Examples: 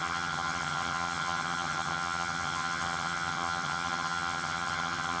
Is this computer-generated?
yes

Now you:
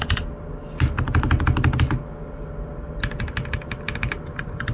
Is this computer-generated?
no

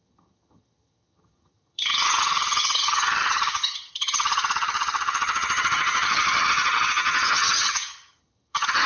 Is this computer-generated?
yes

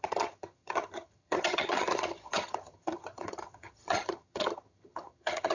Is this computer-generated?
yes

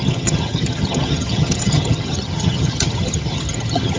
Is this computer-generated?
yes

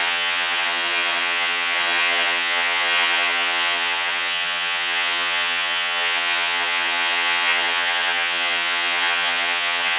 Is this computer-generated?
yes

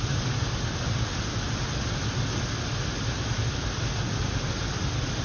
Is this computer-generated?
no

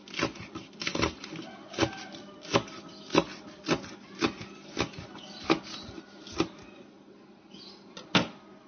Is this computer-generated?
no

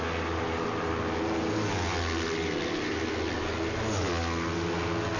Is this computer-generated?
no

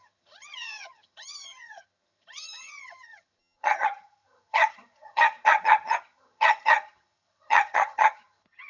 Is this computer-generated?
yes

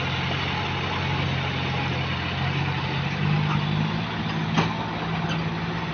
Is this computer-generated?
no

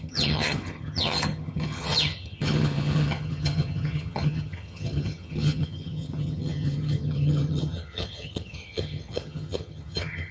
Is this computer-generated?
yes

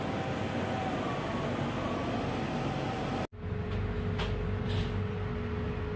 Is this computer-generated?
no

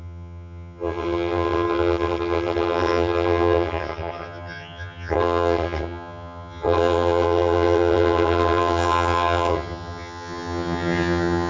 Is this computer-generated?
yes